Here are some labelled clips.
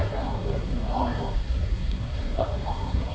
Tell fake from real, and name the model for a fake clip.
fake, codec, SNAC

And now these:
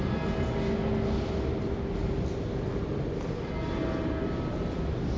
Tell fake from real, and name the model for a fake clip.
real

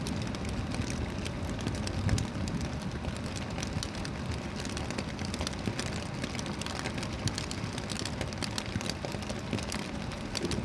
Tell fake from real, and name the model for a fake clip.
real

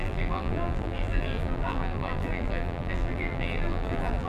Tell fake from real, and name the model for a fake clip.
fake, vocoder, BigVGAN v2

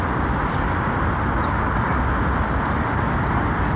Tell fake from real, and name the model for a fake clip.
real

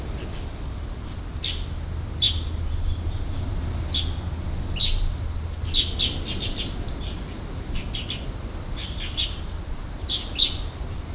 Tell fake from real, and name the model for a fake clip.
real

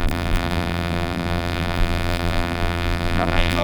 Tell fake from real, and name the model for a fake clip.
fake, vocoder, BigVGAN v2